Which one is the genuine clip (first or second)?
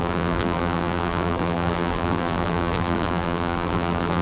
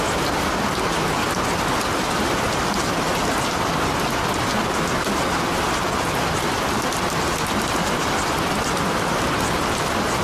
second